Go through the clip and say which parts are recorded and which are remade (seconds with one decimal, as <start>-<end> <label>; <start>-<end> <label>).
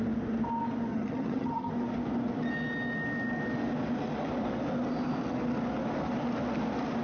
0.0-0.9 recorded; 0.9-1.7 remade; 1.7-7.0 recorded